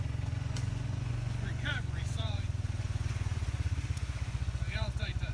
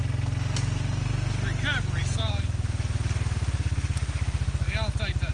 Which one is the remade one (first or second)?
first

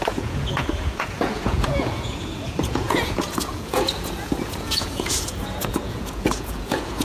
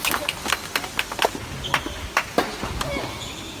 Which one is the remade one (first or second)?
first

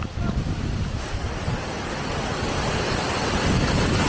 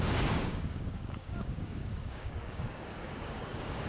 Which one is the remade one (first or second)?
second